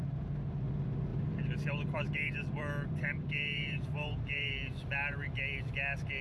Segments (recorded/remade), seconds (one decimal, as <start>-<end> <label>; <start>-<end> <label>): 0.0-1.1 recorded; 1.1-4.5 remade; 4.5-6.2 recorded

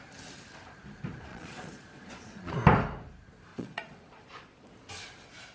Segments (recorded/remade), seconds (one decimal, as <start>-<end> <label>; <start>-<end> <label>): 0.0-1.3 recorded; 1.3-2.5 remade; 2.5-3.5 recorded; 3.5-4.7 remade; 4.7-5.5 recorded